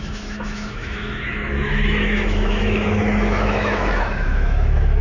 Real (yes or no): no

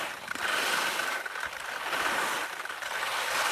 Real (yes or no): yes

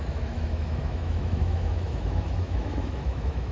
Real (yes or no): no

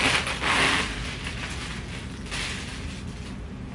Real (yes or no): yes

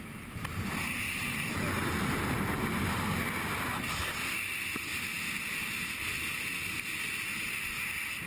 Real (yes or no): yes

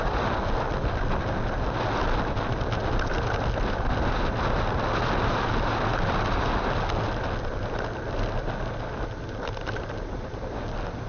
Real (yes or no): yes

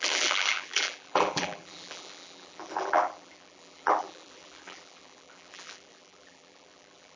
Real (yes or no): no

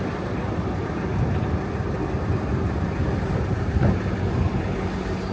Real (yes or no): yes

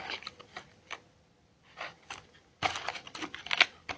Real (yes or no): yes